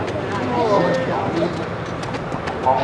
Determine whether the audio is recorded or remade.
recorded